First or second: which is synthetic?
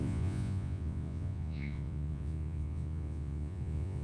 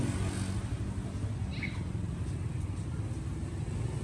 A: first